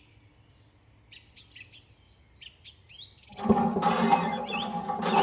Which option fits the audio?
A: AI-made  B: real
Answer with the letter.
B